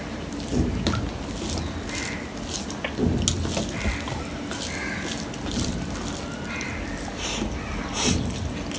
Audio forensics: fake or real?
real